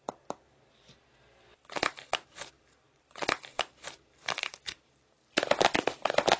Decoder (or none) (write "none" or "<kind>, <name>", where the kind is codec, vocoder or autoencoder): none